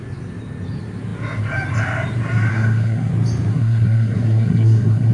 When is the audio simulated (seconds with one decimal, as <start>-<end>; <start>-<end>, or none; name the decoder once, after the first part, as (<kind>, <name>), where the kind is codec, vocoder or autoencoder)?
2.5-3.1 (codec, SNAC); 3.5-5.1